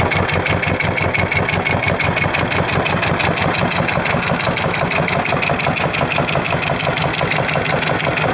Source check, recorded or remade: recorded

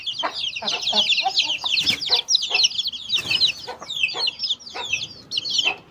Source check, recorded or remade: recorded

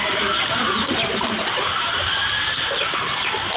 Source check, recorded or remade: recorded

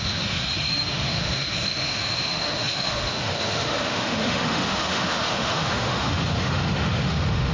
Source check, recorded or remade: remade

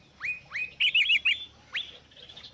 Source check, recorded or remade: recorded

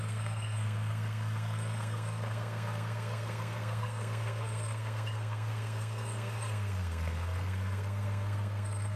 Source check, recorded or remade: remade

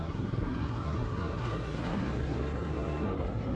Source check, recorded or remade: remade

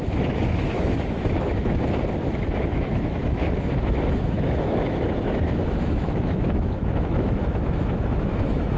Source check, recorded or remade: remade